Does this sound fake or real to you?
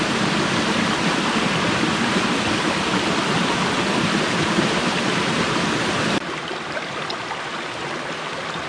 fake